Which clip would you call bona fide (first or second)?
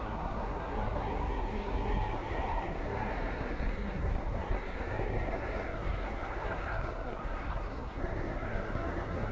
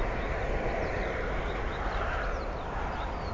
second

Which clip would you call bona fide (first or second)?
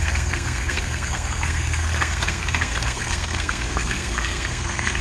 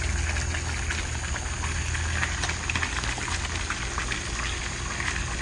second